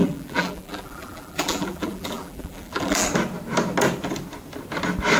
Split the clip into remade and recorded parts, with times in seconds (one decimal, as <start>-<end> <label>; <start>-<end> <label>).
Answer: 0.0-3.1 remade; 3.1-5.2 recorded